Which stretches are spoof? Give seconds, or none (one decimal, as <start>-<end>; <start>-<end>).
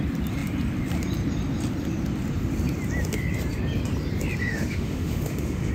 4.4-5.7